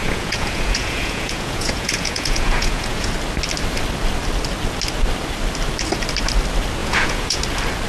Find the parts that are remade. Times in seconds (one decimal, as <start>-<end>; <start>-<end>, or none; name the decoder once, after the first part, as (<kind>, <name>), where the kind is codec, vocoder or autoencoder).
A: 0.0-3.1 (vocoder, Vocos); 6.8-7.4

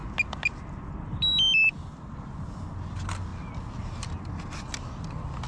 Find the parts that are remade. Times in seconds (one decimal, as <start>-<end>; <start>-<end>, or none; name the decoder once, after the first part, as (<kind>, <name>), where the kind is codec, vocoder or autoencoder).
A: none

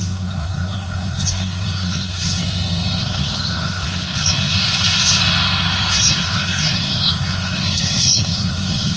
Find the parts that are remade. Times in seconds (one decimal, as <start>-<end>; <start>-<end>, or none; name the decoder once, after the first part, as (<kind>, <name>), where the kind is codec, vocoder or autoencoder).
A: 0.0-2.4 (codec, SNAC); 3.0-5.2; 5.9-9.0

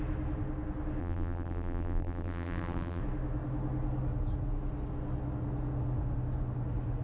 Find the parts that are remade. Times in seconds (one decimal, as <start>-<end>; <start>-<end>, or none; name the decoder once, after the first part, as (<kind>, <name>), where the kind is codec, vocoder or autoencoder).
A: 1.0-3.0 (vocoder, BigVGAN v2)

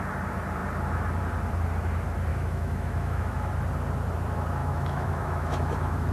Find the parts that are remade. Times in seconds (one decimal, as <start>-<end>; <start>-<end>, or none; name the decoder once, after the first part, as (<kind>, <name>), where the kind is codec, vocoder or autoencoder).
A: 2.3-3.5 (autoencoder, DAC-VAE); 4.6-6.1

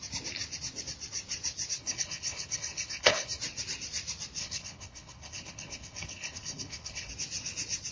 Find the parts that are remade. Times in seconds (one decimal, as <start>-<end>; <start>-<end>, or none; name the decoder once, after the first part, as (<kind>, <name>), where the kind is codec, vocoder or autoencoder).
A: 1.8-3.4 (codec, HILCodec); 4.4-7.1

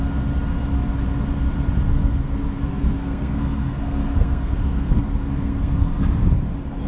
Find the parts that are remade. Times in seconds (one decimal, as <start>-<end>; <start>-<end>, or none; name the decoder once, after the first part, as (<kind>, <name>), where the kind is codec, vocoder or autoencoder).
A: 1.9-6.0 (codec, SNAC)

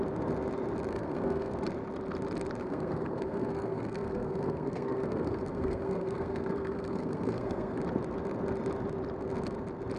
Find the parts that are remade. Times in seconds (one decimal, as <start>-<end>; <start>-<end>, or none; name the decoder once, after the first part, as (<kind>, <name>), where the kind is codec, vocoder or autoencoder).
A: 0.9-1.5 (codec, SNAC); 2.6-7.8